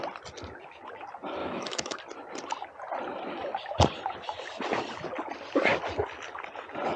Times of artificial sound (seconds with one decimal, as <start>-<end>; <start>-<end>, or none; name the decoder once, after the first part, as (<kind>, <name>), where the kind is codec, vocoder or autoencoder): 1.4-2.0 (autoencoder, DAC-VAE)